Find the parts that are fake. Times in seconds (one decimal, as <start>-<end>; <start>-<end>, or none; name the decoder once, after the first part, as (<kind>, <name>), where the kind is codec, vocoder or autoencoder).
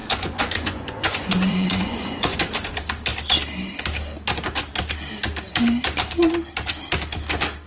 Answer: 0.0-2.4 (vocoder, Vocos)